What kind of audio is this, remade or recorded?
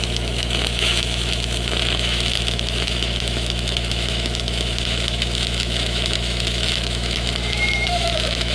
remade